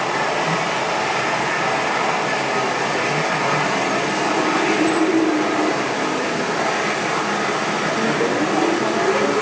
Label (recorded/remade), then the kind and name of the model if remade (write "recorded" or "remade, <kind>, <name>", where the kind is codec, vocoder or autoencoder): recorded